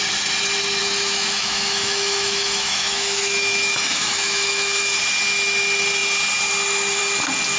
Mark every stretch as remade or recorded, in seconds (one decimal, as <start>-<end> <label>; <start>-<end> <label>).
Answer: 0.0-0.8 recorded; 0.8-5.0 remade; 5.0-7.6 recorded